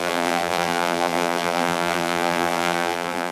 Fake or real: fake